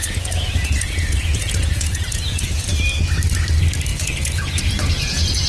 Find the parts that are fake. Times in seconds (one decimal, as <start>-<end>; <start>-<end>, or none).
0.0-2.7; 3.9-5.5